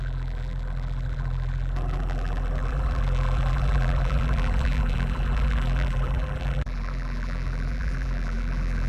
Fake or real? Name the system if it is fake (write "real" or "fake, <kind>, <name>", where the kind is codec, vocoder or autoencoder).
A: fake, vocoder, BigVGAN v2